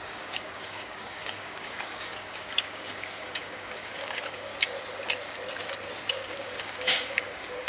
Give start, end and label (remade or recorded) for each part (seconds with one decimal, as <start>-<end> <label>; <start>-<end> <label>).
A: 0.0-4.5 remade; 4.5-6.1 recorded; 6.1-7.7 remade